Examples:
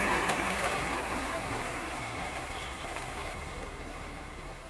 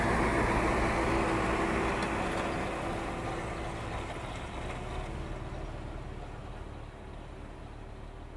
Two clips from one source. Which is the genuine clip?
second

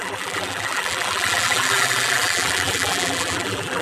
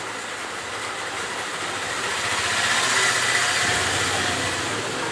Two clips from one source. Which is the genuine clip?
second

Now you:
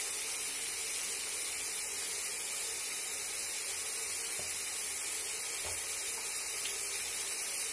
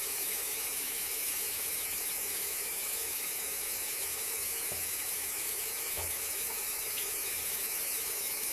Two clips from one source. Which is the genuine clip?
first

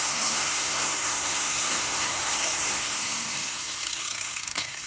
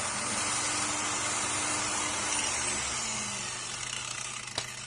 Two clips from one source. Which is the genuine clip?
second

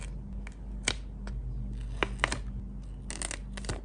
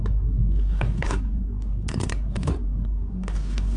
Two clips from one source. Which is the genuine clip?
first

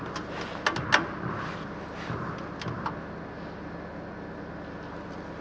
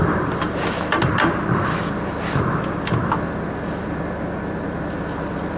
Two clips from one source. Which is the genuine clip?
first